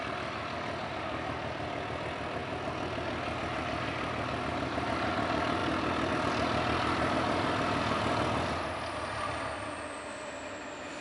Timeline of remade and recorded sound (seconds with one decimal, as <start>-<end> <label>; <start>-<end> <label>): 0.0-11.0 recorded